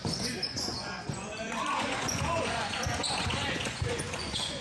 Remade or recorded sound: remade